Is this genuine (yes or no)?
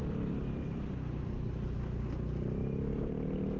yes